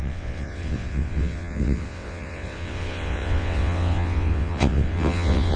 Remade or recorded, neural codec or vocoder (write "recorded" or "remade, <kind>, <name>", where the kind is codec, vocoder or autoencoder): remade, vocoder, WaveNeXt